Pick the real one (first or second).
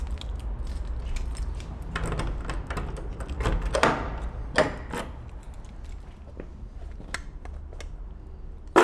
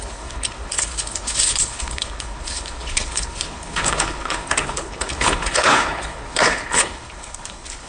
first